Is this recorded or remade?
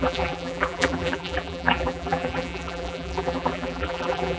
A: remade